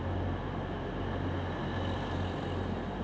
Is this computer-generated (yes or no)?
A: no